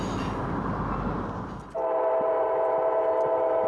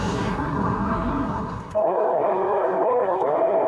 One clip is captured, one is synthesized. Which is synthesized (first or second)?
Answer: second